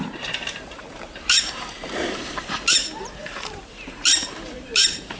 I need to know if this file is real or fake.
fake